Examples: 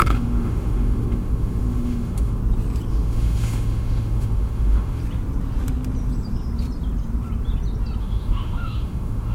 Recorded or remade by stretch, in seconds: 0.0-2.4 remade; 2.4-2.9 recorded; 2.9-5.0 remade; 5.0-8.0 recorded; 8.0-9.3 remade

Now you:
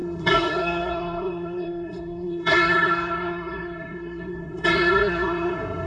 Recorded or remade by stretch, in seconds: 0.0-5.9 remade

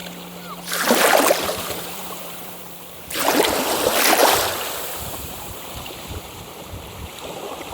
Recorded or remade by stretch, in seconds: 0.0-1.6 recorded; 1.6-7.7 remade

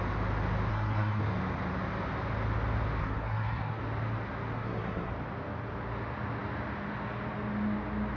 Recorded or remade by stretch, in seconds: 0.0-0.7 recorded; 0.7-1.2 remade; 1.2-3.0 recorded; 3.0-3.8 remade; 3.8-4.5 recorded; 4.5-5.1 remade; 5.1-8.2 recorded

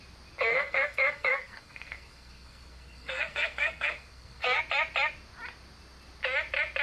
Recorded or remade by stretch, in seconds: 0.0-0.5 recorded; 0.5-4.6 remade; 4.6-6.8 recorded

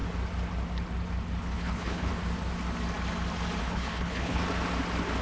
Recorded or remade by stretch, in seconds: 0.0-1.4 recorded; 1.4-2.1 remade; 2.1-3.6 recorded; 3.6-4.4 remade; 4.4-5.2 recorded

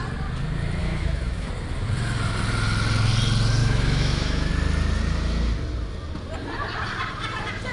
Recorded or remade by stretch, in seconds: 0.0-0.8 recorded; 0.8-1.5 remade; 1.5-3.6 recorded; 3.6-4.5 remade; 4.5-7.7 recorded